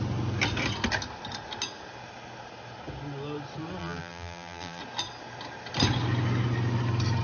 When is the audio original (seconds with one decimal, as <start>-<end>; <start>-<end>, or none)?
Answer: 0.0-3.8; 4.8-7.2

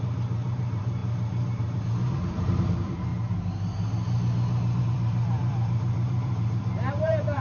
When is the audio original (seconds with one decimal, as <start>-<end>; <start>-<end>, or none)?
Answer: 3.1-4.8